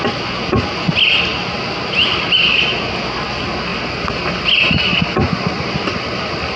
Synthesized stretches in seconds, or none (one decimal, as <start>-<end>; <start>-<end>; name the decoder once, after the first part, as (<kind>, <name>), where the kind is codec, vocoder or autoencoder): 3.7-4.4 (vocoder, BigVGAN v2)